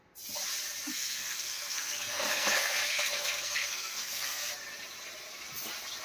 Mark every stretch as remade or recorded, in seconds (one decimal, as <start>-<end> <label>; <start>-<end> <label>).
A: 0.0-0.9 recorded; 0.9-4.5 remade; 4.5-6.0 recorded